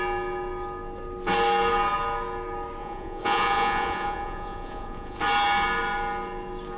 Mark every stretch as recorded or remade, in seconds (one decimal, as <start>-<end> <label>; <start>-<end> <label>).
0.0-2.8 recorded; 2.8-5.2 remade; 5.2-6.8 recorded